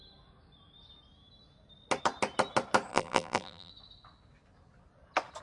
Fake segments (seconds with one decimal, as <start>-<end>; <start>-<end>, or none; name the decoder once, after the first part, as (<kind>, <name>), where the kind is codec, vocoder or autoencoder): 2.9-3.7 (vocoder, BigVGAN v2)